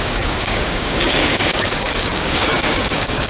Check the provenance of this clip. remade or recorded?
remade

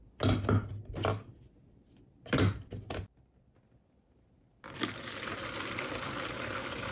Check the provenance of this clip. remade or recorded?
recorded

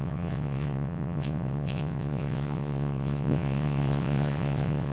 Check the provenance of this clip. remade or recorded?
remade